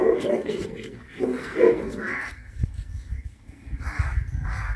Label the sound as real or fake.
fake